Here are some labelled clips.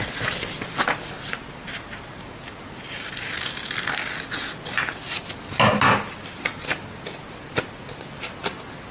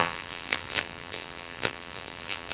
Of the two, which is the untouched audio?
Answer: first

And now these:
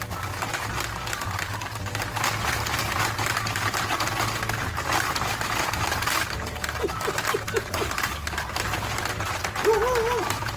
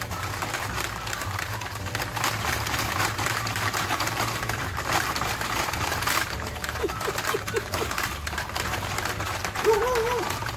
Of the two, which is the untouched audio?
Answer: first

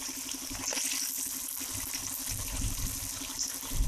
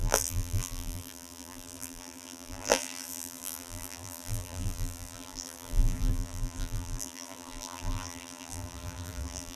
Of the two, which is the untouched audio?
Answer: first